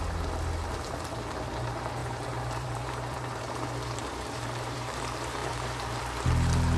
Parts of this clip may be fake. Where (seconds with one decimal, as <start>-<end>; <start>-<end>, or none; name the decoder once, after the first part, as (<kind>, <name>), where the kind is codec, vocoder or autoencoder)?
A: 2.0-5.0 (vocoder, BigVGAN v2); 5.4-6.0